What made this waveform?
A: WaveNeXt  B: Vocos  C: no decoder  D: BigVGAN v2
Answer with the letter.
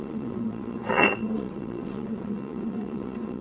A